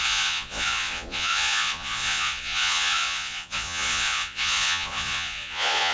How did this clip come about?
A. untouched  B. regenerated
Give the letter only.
B